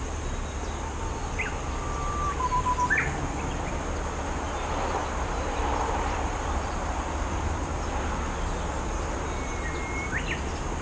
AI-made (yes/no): no